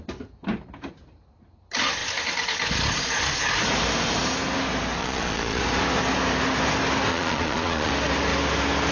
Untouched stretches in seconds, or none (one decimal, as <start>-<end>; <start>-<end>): 0.0-5.0; 5.6-7.1; 7.9-8.9